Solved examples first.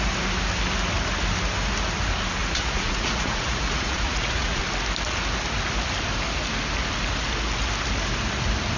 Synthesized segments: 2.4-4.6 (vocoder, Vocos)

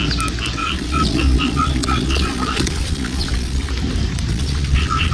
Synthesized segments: 0.6-3.7 (vocoder, Vocos); 4.3-5.1

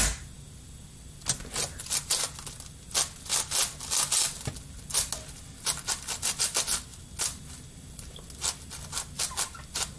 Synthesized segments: none

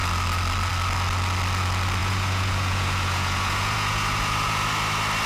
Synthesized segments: 2.0-4.7 (vocoder, Vocos)

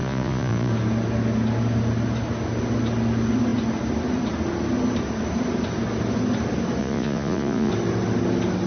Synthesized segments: 0.0-0.7 (vocoder, Vocos); 6.8-7.7